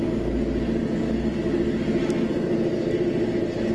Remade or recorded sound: recorded